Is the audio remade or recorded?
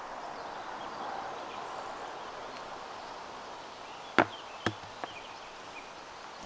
recorded